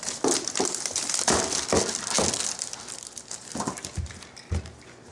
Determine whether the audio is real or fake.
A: real